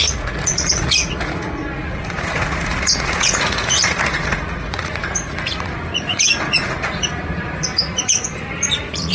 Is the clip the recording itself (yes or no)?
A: no